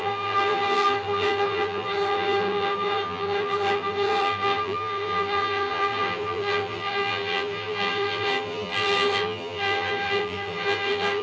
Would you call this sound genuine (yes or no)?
no